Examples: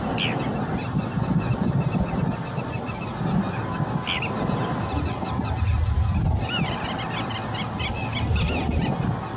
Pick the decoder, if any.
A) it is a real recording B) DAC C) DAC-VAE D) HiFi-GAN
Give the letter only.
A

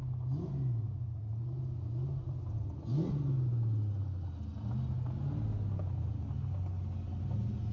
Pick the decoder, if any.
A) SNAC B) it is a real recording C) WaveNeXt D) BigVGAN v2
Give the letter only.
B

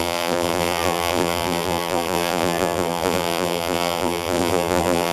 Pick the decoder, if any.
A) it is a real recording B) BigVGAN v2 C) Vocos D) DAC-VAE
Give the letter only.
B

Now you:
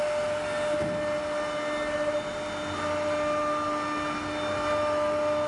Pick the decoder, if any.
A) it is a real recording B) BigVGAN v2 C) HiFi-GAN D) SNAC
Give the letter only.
A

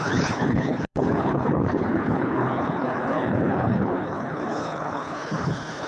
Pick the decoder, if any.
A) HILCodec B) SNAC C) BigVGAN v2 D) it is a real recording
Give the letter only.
A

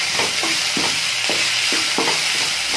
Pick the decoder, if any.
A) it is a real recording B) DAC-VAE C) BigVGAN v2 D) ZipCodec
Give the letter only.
A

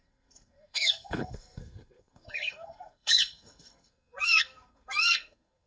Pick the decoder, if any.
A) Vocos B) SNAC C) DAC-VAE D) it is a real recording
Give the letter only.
B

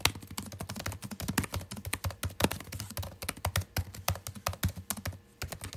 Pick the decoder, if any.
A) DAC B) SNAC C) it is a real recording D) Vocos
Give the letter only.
C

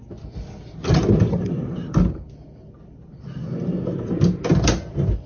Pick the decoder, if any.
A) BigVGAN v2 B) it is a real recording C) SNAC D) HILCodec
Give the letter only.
B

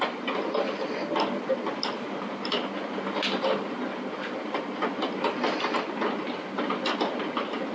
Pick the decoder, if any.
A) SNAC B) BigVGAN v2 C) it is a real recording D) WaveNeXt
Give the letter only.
C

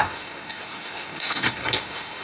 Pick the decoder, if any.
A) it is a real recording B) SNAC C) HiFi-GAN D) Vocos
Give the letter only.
B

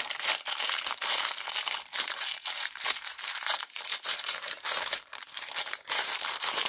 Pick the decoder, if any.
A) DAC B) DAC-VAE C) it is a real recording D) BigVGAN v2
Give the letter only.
D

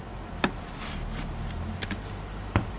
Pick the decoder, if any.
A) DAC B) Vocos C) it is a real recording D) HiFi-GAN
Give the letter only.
C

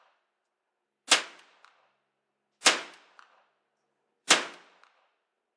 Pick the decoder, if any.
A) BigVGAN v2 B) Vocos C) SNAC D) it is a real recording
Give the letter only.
D